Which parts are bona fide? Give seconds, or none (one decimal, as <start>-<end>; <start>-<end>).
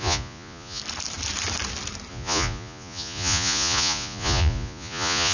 0.8-2.1